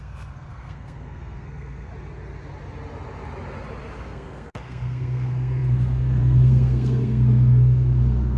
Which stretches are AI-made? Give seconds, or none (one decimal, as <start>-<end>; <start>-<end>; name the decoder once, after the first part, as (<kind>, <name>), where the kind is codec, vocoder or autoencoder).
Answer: 0.0-1.9 (codec, SNAC); 4.0-8.4